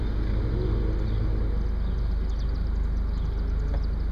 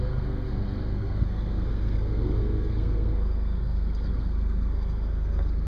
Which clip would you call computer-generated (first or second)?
second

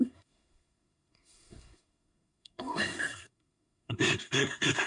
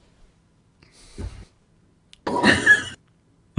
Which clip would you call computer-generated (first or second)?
first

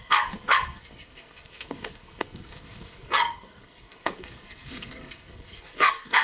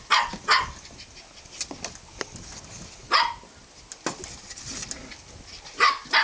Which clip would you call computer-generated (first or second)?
first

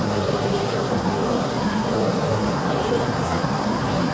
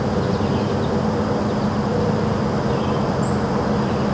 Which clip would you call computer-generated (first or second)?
first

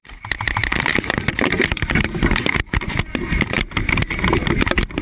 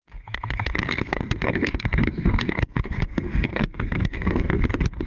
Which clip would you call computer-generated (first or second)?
second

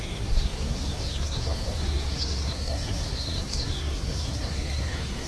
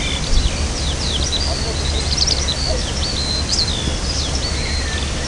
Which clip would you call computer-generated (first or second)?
first